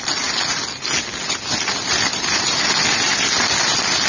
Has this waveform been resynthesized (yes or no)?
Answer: no